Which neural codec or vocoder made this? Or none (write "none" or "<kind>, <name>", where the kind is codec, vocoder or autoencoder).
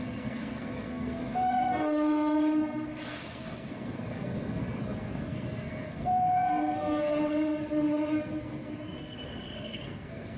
codec, SNAC